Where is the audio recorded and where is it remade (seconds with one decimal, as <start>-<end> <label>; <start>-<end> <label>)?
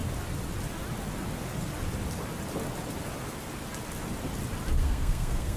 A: 0.0-4.8 recorded; 4.8-5.6 remade